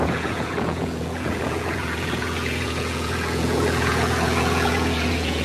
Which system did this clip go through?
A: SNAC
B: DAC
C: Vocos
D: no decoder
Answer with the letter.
C